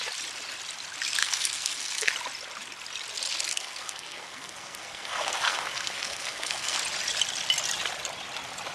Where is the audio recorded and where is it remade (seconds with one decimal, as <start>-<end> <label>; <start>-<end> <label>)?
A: 0.0-1.2 recorded; 1.2-2.1 remade; 2.1-3.5 recorded; 3.5-6.8 remade; 6.8-8.7 recorded